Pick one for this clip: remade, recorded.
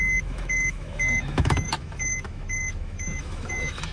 remade